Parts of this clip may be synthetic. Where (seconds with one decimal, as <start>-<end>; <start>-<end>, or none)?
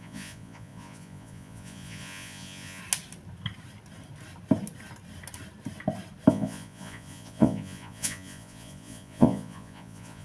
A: 0.0-2.8; 6.3-10.2